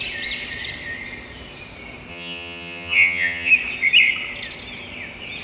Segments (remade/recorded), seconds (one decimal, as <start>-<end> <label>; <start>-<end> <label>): 0.0-2.1 recorded; 2.1-3.5 remade; 3.5-5.4 recorded